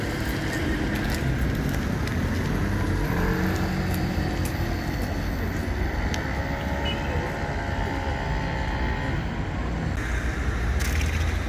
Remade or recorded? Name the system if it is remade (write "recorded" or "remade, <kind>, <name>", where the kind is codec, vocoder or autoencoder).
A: recorded